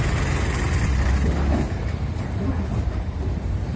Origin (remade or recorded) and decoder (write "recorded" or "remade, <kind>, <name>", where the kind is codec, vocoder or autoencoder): recorded